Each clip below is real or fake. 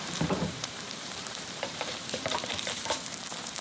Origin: fake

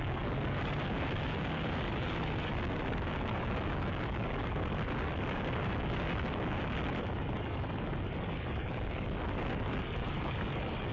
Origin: fake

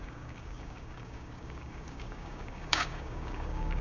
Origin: fake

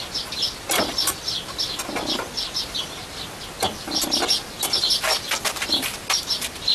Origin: real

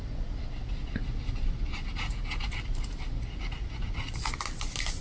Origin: real